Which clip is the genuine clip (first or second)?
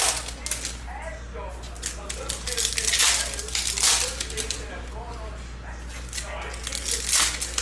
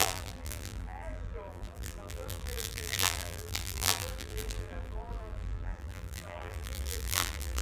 first